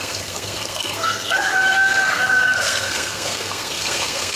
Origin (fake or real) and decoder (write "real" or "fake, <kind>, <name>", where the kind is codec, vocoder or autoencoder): fake, codec, SNAC